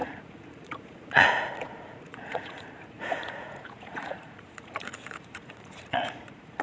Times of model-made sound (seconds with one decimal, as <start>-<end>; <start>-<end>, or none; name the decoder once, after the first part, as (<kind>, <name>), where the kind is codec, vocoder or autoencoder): 0.0-6.6 (vocoder, Vocos)